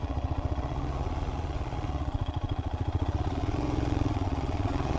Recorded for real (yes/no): no